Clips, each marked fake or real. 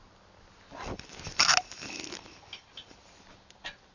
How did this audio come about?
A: real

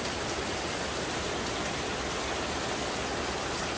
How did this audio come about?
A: real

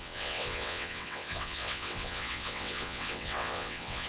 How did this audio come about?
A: fake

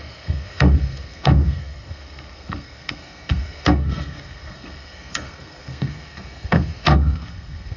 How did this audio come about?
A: fake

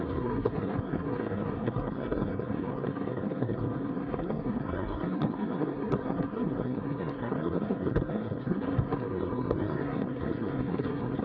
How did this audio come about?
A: fake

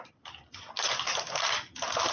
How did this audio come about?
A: real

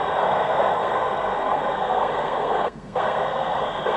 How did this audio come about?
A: fake